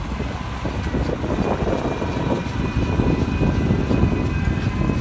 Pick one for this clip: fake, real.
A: real